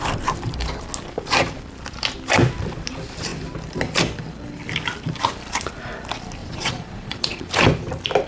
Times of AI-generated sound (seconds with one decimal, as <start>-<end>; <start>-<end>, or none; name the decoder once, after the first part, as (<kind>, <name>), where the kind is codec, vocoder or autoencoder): 6.4-7.4 (vocoder, Vocos)